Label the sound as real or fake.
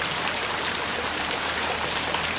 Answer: fake